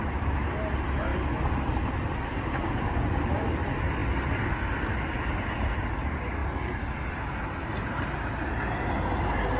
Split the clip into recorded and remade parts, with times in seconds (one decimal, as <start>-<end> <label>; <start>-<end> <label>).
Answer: 0.0-9.6 recorded